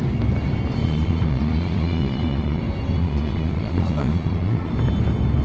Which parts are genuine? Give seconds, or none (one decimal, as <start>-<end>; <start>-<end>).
0.0-0.8; 2.6-3.0; 4.7-5.4